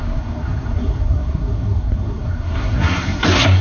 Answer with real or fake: fake